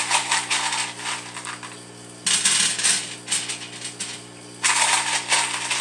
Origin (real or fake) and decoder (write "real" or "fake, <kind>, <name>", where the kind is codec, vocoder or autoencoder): real